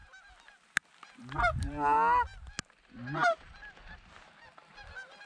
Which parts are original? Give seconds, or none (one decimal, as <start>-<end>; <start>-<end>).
0.0-5.3